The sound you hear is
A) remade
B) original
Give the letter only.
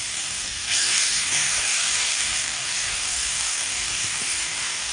A